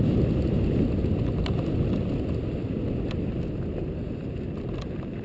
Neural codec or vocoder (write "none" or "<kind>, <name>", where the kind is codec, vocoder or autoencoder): none